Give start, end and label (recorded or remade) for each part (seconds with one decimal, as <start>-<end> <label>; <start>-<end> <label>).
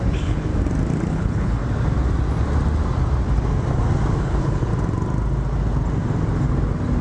0.0-0.5 remade; 0.5-1.1 recorded; 1.1-1.6 remade; 1.6-4.2 recorded; 4.2-4.7 remade; 4.7-7.0 recorded